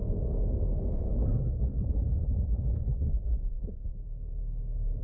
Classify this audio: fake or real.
fake